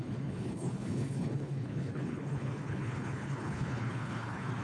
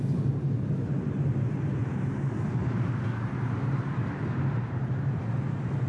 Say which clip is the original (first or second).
second